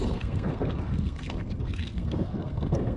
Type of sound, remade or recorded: remade